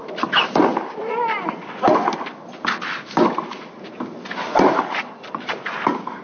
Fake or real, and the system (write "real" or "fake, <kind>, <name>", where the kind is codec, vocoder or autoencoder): real